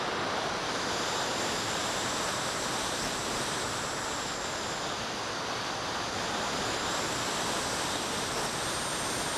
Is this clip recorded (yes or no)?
yes